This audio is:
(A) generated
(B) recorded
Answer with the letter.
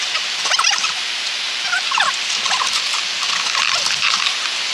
B